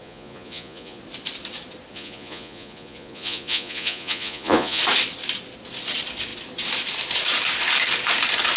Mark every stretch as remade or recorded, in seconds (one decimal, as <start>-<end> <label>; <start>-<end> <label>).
0.0-1.0 remade; 1.0-1.9 recorded; 1.9-4.8 remade; 4.8-8.6 recorded